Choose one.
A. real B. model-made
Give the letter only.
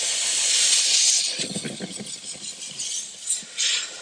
A